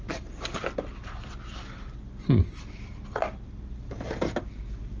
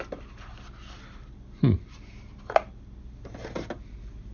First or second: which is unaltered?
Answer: second